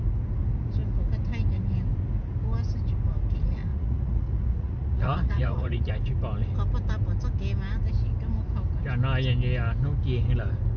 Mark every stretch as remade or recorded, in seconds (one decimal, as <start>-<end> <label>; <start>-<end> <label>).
0.0-3.7 recorded; 3.7-5.9 remade; 5.9-10.8 recorded